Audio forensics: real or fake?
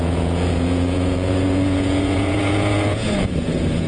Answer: fake